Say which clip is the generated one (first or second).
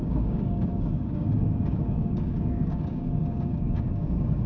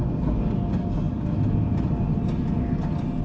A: first